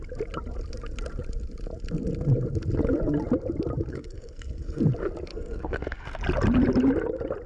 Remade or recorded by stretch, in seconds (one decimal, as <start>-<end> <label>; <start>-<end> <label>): 0.0-3.9 recorded; 3.9-4.8 remade; 4.8-5.3 recorded; 5.3-6.2 remade; 6.2-7.5 recorded